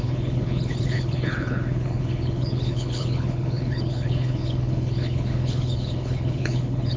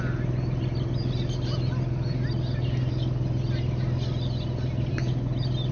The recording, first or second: second